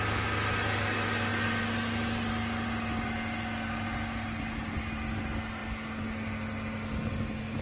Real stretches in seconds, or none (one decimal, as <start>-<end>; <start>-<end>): 0.0-7.6